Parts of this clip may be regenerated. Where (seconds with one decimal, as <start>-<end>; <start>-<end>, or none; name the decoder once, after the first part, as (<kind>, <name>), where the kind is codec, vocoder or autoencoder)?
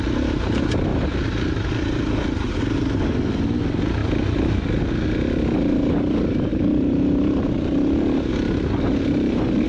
0.9-2.5 (vocoder, BigVGAN v2); 6.5-8.3